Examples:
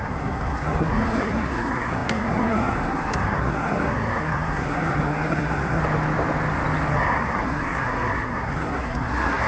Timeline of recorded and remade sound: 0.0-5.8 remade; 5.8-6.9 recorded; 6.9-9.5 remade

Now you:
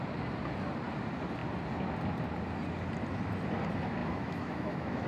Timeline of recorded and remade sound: 0.0-4.0 recorded; 4.0-5.1 remade

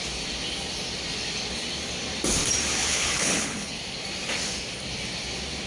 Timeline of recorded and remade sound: 0.0-2.8 recorded; 2.8-3.8 remade; 3.8-5.7 recorded